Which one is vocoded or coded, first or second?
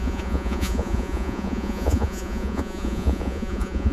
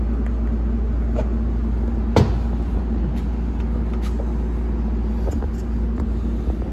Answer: first